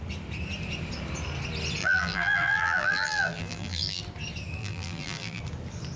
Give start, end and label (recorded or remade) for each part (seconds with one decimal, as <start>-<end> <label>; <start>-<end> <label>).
0.0-1.8 recorded; 1.8-4.0 remade; 4.0-4.6 recorded; 4.6-5.4 remade; 5.4-6.0 recorded